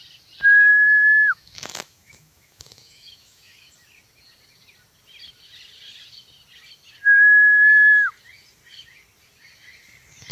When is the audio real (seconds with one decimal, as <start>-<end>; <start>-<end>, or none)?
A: 0.0-0.7; 3.7-10.3